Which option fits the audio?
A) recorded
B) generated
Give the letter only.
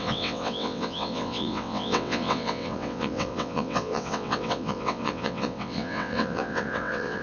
B